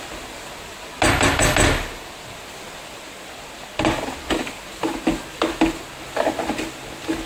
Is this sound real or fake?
real